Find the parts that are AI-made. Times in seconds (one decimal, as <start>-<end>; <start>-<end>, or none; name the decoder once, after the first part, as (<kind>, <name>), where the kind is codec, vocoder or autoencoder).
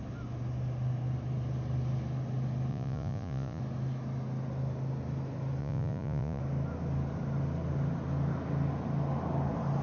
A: 2.7-3.6 (vocoder, Vocos); 5.6-6.4